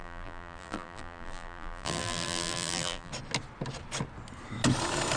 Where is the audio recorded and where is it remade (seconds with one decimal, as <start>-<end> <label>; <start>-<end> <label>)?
0.0-3.1 remade; 3.1-5.2 recorded